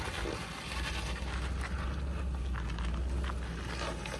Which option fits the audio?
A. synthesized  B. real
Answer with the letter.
B